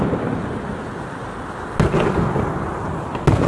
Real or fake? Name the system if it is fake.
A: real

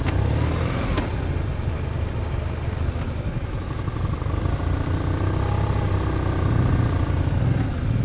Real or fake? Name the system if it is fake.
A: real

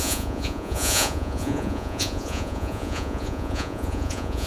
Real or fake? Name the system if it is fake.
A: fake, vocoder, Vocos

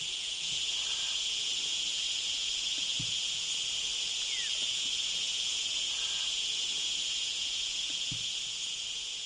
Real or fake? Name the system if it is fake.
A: fake, vocoder, Vocos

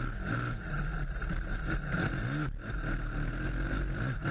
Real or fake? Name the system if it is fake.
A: real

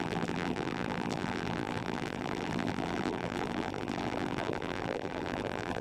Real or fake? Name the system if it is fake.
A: fake, vocoder, BigVGAN v2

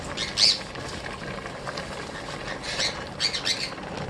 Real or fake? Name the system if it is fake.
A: real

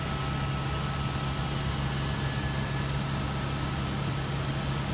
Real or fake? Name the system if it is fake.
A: real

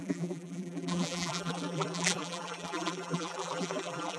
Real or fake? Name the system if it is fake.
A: fake, vocoder, BigVGAN v2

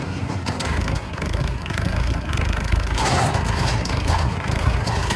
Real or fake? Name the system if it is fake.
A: fake, codec, SNAC